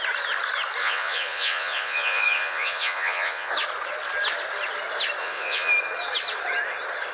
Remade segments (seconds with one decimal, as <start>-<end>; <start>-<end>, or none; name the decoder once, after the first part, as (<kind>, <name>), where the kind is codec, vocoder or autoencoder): 0.8-3.5 (vocoder, Vocos); 5.2-5.7